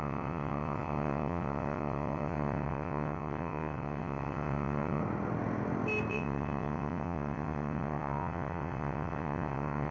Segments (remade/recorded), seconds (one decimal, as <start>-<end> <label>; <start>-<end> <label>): 0.0-5.0 remade; 5.0-6.1 recorded; 6.1-9.9 remade